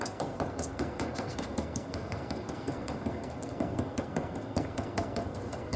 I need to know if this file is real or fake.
fake